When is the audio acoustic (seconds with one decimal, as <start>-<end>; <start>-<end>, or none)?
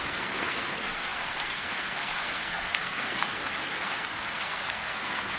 none